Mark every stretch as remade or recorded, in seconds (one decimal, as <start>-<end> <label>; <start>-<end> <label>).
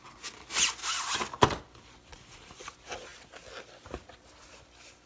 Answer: 0.0-5.1 recorded